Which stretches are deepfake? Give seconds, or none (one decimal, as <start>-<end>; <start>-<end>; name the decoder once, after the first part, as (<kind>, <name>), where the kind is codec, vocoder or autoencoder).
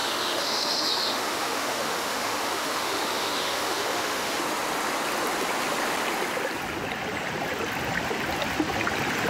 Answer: 0.0-4.4 (autoencoder, DAC-VAE)